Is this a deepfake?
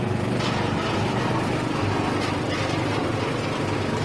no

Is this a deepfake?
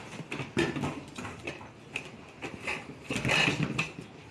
no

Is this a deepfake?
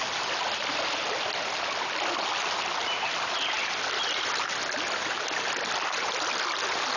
no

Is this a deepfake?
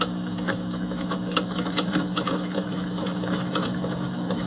yes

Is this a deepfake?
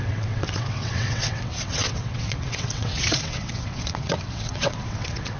yes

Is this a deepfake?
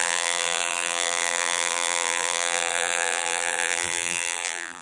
yes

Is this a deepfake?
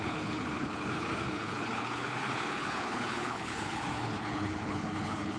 yes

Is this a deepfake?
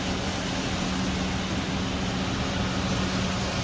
no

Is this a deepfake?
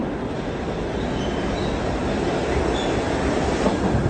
no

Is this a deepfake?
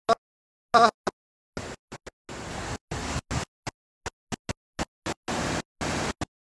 no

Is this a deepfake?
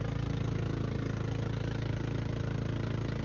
no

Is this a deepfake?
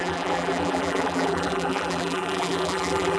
yes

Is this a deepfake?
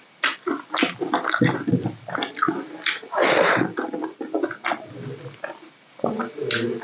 no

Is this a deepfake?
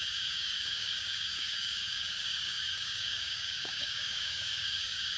yes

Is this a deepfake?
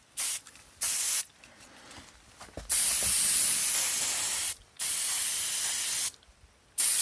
no